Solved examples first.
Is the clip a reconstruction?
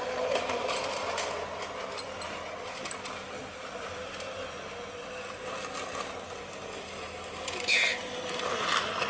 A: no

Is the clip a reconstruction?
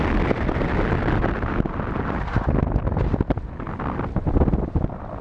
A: no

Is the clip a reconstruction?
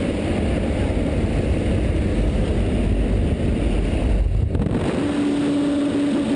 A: no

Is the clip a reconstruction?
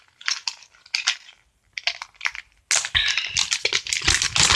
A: no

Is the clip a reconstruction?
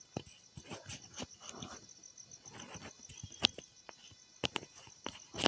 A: no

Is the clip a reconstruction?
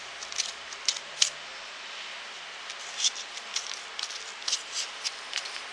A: no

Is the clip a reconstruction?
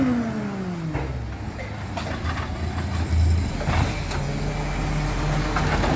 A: no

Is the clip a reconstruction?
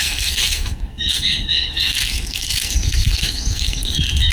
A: yes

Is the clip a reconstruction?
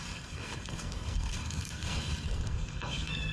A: yes